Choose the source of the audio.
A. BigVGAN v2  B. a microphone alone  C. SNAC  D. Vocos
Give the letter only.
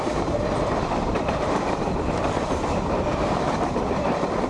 A